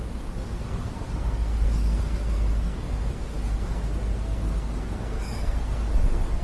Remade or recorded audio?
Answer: remade